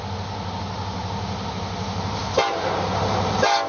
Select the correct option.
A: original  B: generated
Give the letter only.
A